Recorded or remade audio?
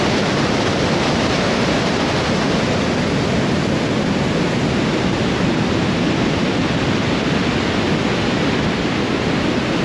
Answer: recorded